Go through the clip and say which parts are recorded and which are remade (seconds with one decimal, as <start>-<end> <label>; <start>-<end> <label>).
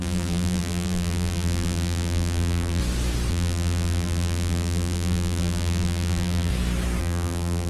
0.0-2.8 remade; 2.8-3.3 recorded; 3.3-6.5 remade; 6.5-7.0 recorded; 7.0-7.7 remade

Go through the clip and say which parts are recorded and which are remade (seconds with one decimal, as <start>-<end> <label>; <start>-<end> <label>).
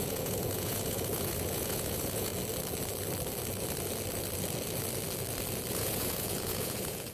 0.0-2.3 remade; 2.3-5.7 recorded; 5.7-7.1 remade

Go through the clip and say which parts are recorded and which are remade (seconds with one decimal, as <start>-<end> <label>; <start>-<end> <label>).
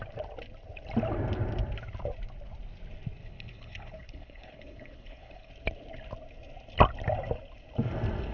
0.0-3.2 recorded; 3.2-5.5 remade; 5.5-8.3 recorded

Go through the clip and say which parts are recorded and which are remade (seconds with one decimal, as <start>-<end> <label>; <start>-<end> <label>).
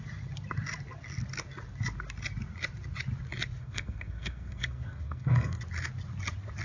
0.0-3.6 recorded; 3.6-5.6 remade; 5.6-6.6 recorded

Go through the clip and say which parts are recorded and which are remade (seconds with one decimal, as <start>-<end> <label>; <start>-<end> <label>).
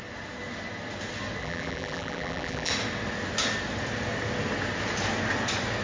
0.0-1.4 recorded; 1.4-2.7 remade; 2.7-5.8 recorded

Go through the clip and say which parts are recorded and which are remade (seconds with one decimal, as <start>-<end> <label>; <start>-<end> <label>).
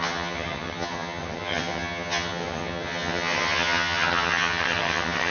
0.0-5.3 remade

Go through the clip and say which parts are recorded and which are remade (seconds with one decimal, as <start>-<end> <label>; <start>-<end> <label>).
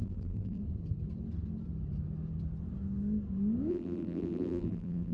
0.0-0.6 remade; 0.6-3.7 recorded; 3.7-5.1 remade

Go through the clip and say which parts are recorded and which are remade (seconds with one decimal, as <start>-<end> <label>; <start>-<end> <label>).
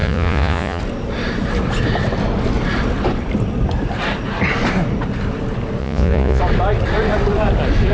0.0-0.8 remade; 0.8-5.8 recorded; 5.8-6.4 remade; 6.4-7.9 recorded